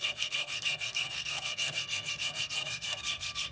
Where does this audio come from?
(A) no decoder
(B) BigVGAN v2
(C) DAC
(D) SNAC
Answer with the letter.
D